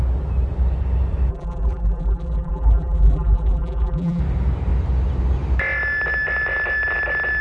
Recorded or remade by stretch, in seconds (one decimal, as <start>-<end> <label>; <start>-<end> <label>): 0.0-1.3 recorded; 1.3-4.2 remade; 4.2-7.4 recorded